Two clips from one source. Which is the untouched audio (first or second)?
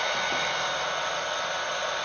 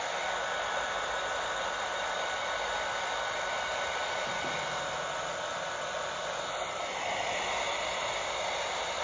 first